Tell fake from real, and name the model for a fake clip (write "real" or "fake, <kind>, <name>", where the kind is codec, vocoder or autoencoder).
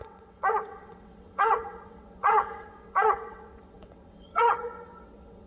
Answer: fake, vocoder, WaveNeXt